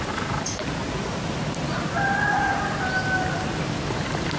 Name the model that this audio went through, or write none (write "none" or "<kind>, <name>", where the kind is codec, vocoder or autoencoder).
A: none